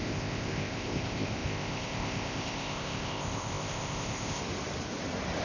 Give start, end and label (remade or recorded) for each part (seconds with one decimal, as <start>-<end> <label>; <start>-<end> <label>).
0.0-4.4 remade; 4.4-5.4 recorded